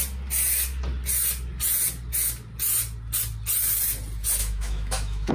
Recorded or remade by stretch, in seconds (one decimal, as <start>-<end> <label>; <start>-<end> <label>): 0.0-4.4 recorded; 4.4-5.3 remade